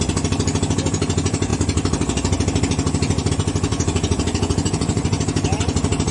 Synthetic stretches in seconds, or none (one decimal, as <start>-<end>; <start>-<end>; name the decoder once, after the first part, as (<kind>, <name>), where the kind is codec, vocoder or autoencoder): 3.7-5.2 (vocoder, Vocos)